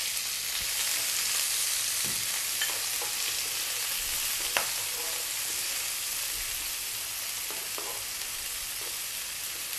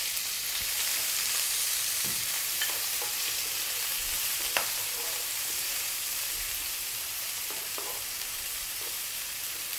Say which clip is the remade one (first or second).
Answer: second